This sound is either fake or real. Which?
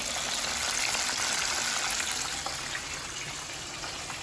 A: real